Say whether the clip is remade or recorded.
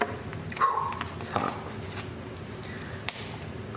recorded